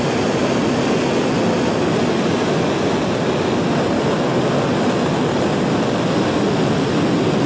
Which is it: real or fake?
real